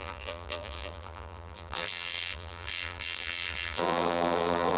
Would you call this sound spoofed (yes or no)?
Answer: yes